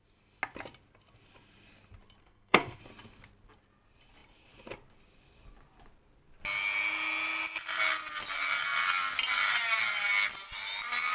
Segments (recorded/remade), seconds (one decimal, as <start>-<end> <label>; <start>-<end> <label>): 0.0-2.2 recorded; 2.2-2.8 remade; 2.8-11.1 recorded